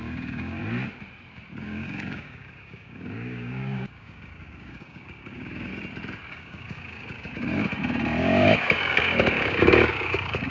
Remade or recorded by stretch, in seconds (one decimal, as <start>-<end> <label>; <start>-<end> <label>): 0.0-0.6 remade; 0.6-1.6 recorded; 1.6-5.7 remade; 5.7-6.3 recorded; 6.3-7.5 remade; 7.5-8.2 recorded; 8.2-10.5 remade